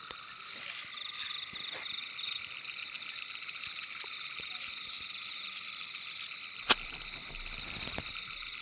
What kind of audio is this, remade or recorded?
recorded